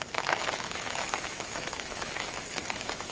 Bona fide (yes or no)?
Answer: no